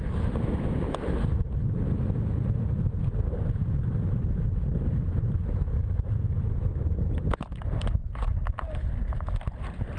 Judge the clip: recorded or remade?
recorded